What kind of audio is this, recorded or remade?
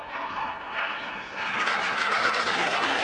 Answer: remade